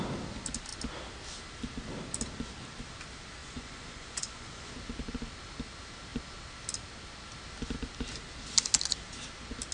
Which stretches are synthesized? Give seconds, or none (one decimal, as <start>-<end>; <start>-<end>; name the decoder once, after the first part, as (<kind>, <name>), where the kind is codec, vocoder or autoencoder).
3.4-4.7 (vocoder, Vocos)